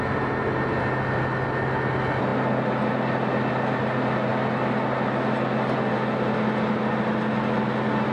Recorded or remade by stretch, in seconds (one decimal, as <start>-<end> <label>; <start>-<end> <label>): 0.0-8.1 recorded